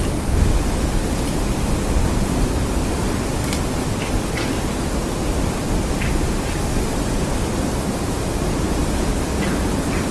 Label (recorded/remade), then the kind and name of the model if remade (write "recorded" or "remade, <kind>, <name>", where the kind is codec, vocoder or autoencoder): recorded